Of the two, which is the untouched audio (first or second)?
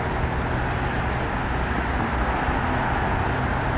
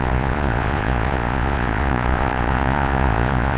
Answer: first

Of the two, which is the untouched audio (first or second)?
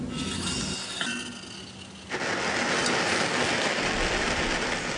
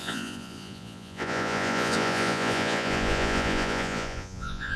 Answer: first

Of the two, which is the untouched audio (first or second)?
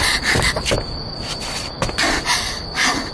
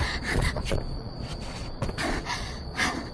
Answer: first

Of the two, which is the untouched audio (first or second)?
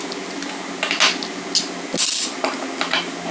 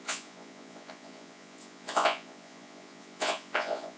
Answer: first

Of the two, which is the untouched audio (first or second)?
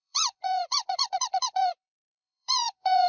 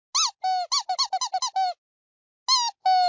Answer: second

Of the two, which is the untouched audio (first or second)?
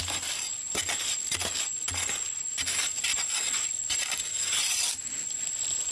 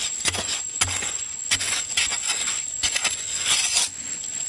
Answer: first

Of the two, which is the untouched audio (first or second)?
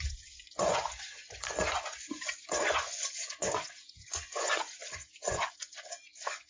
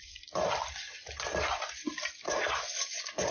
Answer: second